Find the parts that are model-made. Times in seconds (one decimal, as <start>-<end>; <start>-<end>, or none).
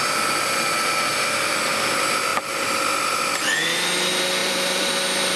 1.1-1.6; 4.4-4.9